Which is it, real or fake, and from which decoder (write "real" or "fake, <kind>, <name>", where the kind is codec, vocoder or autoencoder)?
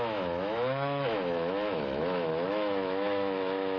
fake, autoencoder, DAC-VAE